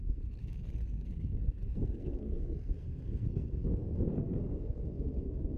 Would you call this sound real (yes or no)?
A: no